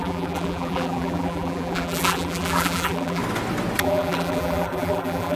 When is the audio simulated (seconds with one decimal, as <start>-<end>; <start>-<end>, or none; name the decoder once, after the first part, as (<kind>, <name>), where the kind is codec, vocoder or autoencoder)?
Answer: 0.0-3.2 (vocoder, BigVGAN v2); 3.8-5.4